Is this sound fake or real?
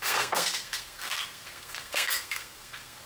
fake